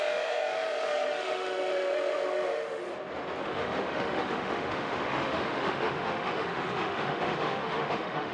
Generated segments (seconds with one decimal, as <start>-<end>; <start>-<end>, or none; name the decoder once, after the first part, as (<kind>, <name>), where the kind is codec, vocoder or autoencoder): 0.0-2.8 (autoencoder, DAC-VAE); 3.4-8.3